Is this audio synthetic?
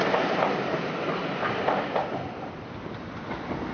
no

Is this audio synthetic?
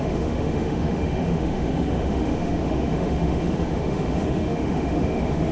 yes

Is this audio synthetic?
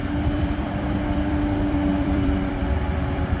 yes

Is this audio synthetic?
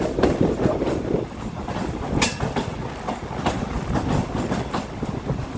no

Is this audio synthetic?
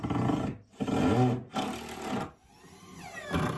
no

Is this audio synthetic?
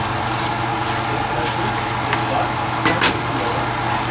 no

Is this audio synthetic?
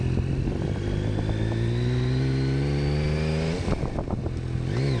no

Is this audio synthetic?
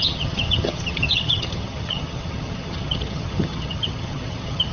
yes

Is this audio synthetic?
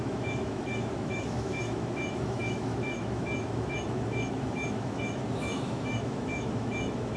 yes